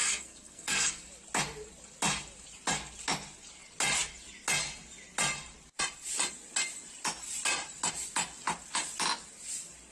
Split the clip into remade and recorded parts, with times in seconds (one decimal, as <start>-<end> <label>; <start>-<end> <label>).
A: 0.0-1.1 remade; 1.1-9.9 recorded